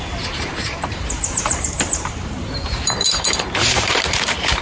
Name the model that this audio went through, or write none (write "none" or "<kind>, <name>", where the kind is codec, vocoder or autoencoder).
vocoder, BigVGAN v2